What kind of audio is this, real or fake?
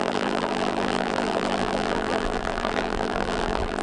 fake